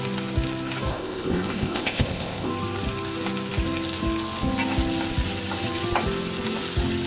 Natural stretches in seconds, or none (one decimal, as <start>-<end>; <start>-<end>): 0.0-0.9; 2.5-7.1